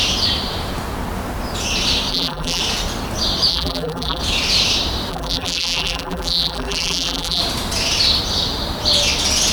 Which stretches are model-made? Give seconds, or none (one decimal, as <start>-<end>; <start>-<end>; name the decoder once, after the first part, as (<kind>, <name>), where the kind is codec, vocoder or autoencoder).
2.1-2.6 (vocoder, BigVGAN v2); 3.5-4.2; 5.1-7.4